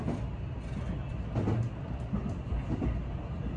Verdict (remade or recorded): recorded